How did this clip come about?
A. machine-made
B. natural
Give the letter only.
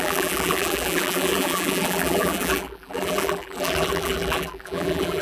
A